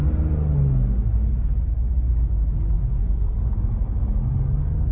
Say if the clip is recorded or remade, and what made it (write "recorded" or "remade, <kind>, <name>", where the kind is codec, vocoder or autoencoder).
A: recorded